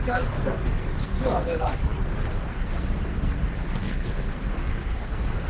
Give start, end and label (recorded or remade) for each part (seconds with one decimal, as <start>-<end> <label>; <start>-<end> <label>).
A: 0.0-5.5 remade